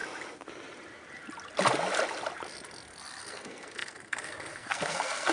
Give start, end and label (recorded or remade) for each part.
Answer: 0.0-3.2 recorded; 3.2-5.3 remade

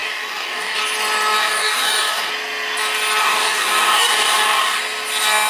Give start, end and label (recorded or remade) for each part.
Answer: 0.0-0.8 remade; 0.8-1.4 recorded; 1.4-2.3 remade; 2.3-3.2 recorded; 3.2-4.8 remade; 4.8-5.5 recorded

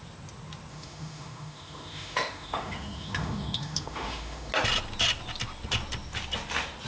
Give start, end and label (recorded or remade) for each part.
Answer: 0.0-0.7 recorded; 0.7-4.5 remade; 4.5-6.9 recorded